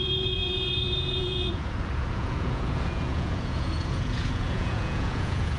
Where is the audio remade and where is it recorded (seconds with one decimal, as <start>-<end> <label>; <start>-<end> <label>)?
0.0-5.6 remade